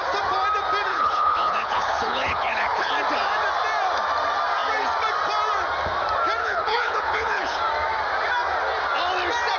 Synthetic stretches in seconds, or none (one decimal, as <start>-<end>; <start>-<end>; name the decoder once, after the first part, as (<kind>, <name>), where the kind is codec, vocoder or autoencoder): 0.9-2.9 (codec, HILCodec); 6.4-7.6